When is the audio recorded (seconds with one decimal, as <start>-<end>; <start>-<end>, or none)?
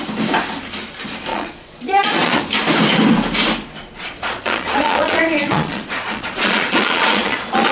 0.0-1.3; 2.4-3.8